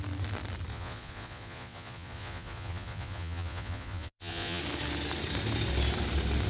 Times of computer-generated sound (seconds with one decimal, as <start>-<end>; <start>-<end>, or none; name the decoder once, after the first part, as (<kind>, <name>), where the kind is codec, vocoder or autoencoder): 0.7-4.6 (vocoder, Vocos)